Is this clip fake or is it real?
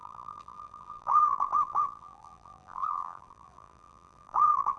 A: fake